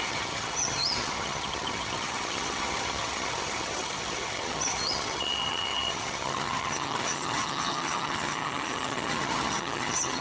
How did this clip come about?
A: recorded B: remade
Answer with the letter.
B